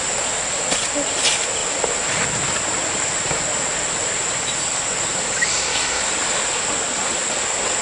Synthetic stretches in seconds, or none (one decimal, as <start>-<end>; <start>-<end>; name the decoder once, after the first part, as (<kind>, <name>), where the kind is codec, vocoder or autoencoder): 5.5-6.0 (codec, SNAC)

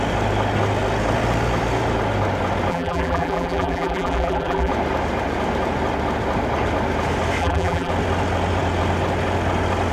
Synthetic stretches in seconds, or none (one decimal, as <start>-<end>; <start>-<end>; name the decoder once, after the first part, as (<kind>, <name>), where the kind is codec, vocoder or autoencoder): 2.7-4.7 (vocoder, BigVGAN v2); 7.4-7.9